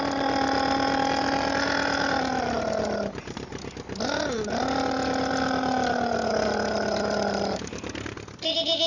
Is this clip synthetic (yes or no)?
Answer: no